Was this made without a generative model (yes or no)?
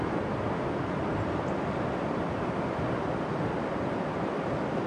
yes